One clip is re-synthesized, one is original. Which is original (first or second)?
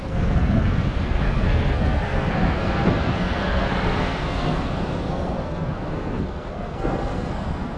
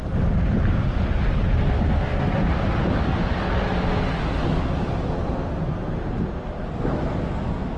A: second